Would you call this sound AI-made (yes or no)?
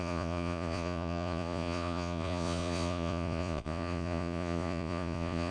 yes